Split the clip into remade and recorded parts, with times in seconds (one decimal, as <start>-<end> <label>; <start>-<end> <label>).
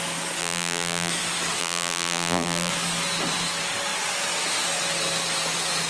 0.0-0.4 recorded; 0.4-1.1 remade; 1.1-1.6 recorded; 1.6-2.7 remade; 2.7-5.9 recorded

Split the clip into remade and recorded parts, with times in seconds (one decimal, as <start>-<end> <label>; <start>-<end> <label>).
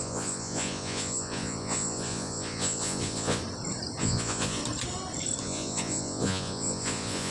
0.0-3.4 remade; 3.4-4.0 recorded; 4.0-4.6 remade; 4.6-5.4 recorded; 5.4-7.3 remade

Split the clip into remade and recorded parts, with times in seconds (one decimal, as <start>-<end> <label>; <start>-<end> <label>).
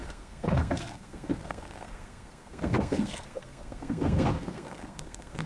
0.0-5.5 remade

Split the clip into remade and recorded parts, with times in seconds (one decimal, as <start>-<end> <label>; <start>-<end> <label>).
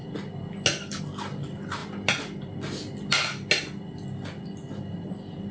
0.0-5.5 recorded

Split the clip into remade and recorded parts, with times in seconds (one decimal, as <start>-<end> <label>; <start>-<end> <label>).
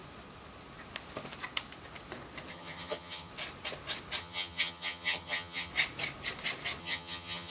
0.0-2.5 recorded; 2.5-3.3 remade; 3.3-4.2 recorded; 4.2-5.7 remade; 5.7-6.8 recorded; 6.8-7.5 remade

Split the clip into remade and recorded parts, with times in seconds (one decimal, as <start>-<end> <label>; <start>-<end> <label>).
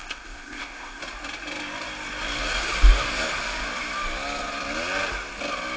0.0-1.0 remade; 1.0-5.8 recorded